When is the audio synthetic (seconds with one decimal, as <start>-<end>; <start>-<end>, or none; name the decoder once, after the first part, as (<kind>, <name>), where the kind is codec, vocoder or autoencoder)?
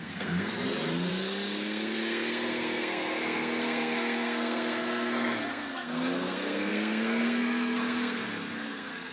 0.0-0.5 (codec, SNAC); 1.1-9.1